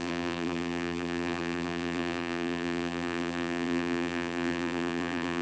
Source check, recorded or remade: remade